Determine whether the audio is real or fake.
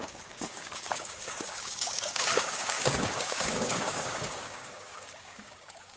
fake